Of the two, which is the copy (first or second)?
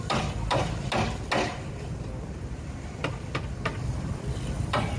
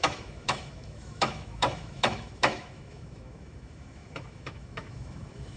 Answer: second